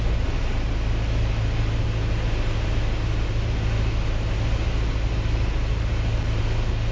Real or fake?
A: real